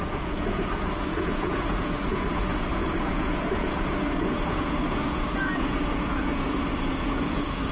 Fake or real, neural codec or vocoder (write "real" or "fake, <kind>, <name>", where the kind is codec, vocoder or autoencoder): fake, vocoder, Vocos